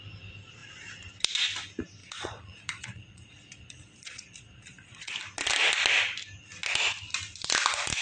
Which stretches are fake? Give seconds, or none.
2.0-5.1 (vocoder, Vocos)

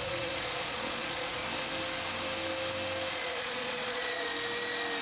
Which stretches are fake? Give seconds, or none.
0.0-1.4 (vocoder, Vocos); 3.1-4.3

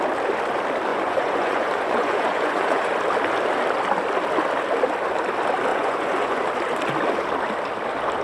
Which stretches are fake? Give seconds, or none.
0.9-2.9 (vocoder, Vocos); 5.7-6.4

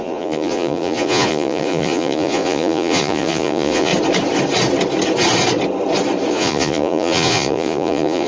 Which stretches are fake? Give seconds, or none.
0.0-3.9 (vocoder, Vocos); 6.3-8.3

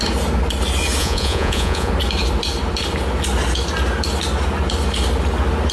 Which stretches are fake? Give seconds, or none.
1.0-1.9 (vocoder, Vocos)

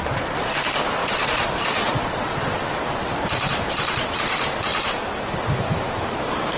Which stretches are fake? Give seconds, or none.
1.0-2.6 (vocoder, Vocos)

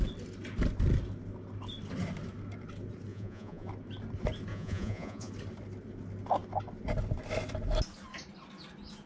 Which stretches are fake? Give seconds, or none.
3.1-3.7 (vocoder, Vocos); 4.5-5.3